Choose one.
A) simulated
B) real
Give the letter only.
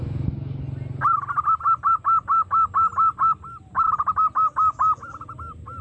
B